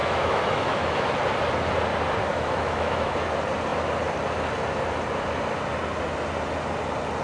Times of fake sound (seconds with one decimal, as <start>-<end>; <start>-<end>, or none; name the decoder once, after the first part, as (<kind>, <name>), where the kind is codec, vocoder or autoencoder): 0.0-1.1 (autoencoder, DAC-VAE); 2.3-3.1